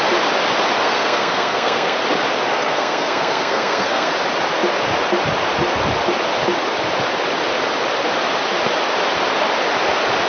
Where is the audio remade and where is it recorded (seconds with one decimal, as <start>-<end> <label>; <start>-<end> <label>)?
0.0-0.8 recorded; 0.8-2.0 remade; 2.0-2.5 recorded; 2.5-4.1 remade; 4.1-10.3 recorded